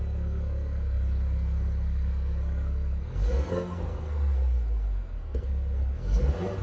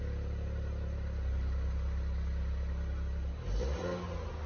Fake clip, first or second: first